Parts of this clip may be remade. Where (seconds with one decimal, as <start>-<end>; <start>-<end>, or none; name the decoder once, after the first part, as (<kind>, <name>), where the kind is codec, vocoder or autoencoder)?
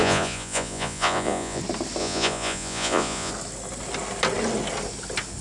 0.0-1.6 (vocoder, Vocos); 2.0-3.3